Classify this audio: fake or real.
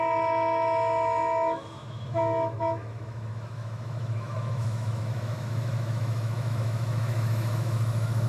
fake